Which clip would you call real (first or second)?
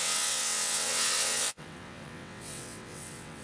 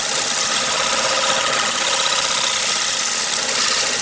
second